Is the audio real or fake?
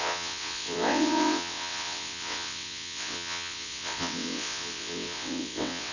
fake